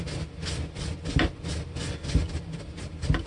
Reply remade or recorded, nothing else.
recorded